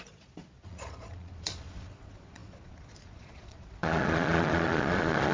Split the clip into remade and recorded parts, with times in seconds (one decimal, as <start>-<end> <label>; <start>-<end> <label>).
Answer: 0.0-5.3 remade